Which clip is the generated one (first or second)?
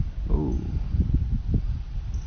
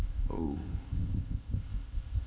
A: second